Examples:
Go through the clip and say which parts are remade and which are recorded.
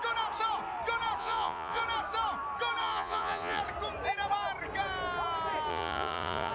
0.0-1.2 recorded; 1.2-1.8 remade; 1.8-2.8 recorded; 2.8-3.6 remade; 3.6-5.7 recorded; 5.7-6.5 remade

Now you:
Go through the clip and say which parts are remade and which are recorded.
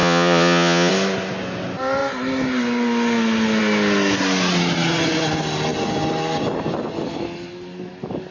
0.0-0.9 remade; 0.9-8.3 recorded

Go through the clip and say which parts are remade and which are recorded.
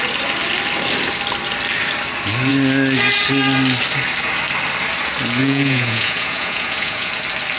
0.0-5.4 recorded; 5.4-7.1 remade; 7.1-7.6 recorded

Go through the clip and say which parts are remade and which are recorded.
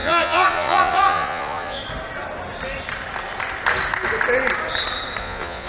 0.0-1.8 remade; 1.8-5.2 recorded; 5.2-5.7 remade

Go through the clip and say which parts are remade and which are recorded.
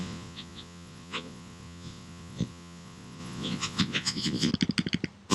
0.0-4.5 remade; 4.5-5.3 recorded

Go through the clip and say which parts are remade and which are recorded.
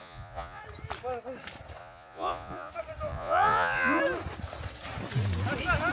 0.0-0.6 remade; 0.6-1.8 recorded; 1.8-2.7 remade; 2.7-3.1 recorded; 3.1-4.0 remade; 4.0-5.9 recorded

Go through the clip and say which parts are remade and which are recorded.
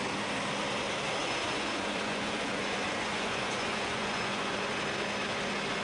0.0-1.2 recorded; 1.2-4.7 remade; 4.7-5.8 recorded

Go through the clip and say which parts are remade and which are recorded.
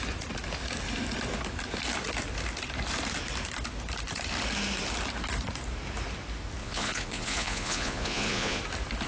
0.0-6.6 recorded; 6.6-8.6 remade; 8.6-9.1 recorded